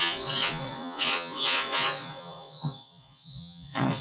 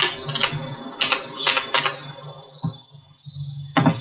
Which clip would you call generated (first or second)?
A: first